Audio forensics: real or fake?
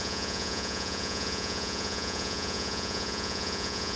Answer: fake